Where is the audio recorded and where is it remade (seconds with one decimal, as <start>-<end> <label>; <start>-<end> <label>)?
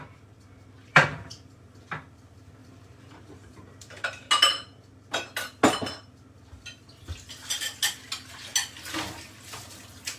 0.0-0.9 recorded; 0.9-1.8 remade; 1.8-2.6 recorded; 2.6-4.3 remade; 4.3-10.2 recorded